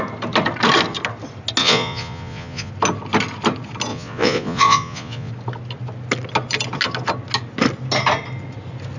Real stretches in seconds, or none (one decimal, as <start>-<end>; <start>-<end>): 0.0-1.6; 2.7-3.9; 5.3-9.0